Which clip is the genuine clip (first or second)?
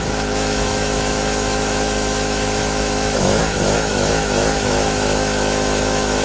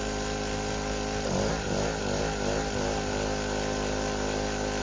second